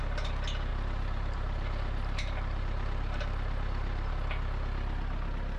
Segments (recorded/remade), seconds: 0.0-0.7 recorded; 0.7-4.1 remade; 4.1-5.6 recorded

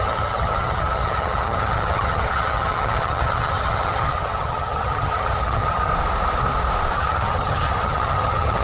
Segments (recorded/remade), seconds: 0.0-5.9 remade; 5.9-6.9 recorded; 6.9-8.6 remade

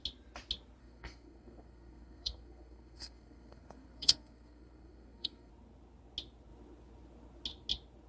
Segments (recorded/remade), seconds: 0.0-0.8 recorded; 0.8-5.5 remade; 5.5-8.1 recorded

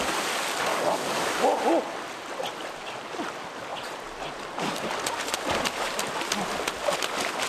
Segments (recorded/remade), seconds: 0.0-0.7 recorded; 0.7-1.3 remade; 1.3-7.5 recorded

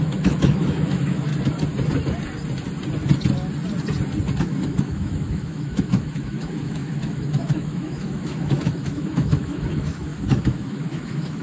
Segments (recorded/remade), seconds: 0.0-1.3 remade; 1.3-4.4 recorded; 4.4-11.4 remade

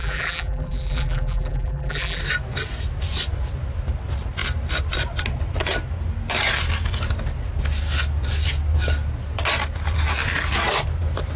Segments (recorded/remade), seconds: 0.0-2.2 remade; 2.2-11.4 recorded

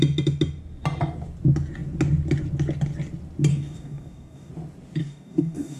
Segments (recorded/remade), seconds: 0.0-3.5 recorded; 3.5-4.5 remade; 4.5-5.0 recorded; 5.0-5.8 remade

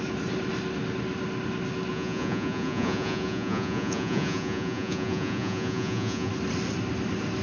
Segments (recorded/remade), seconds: 0.0-1.9 recorded; 1.9-6.3 remade; 6.3-7.4 recorded